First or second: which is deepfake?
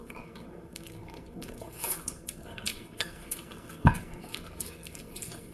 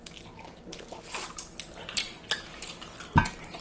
first